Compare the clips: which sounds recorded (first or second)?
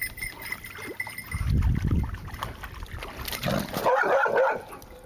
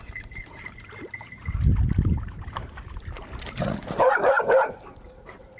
first